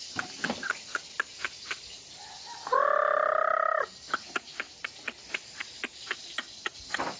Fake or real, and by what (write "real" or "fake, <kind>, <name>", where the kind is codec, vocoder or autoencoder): real